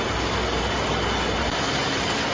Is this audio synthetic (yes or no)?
no